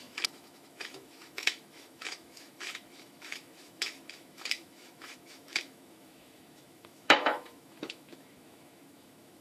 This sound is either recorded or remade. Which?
remade